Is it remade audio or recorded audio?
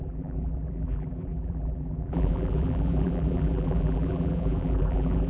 remade